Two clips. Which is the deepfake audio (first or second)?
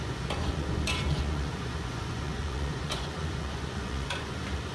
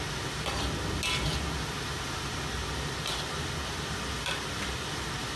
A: first